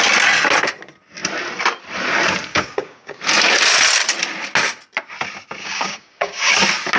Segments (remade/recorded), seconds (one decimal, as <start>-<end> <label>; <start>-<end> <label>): 0.0-2.5 recorded; 2.5-3.2 remade; 3.2-5.6 recorded; 5.6-6.5 remade; 6.5-7.0 recorded